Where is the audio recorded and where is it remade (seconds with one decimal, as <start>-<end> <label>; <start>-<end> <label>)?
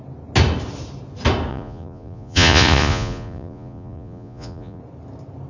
0.0-1.5 recorded; 1.5-4.8 remade; 4.8-5.5 recorded